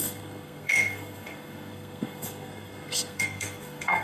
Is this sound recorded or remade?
remade